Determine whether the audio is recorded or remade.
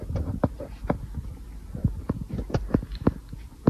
recorded